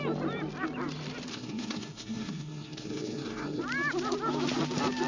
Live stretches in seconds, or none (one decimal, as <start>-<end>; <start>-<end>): 0.0-1.3; 3.6-5.1